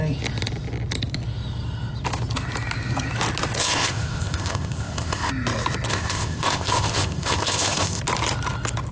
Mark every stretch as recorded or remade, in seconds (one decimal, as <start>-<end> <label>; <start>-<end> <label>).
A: 0.0-3.6 recorded; 3.6-5.3 remade; 5.3-5.9 recorded; 5.9-8.0 remade; 8.0-8.9 recorded